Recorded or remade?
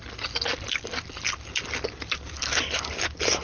recorded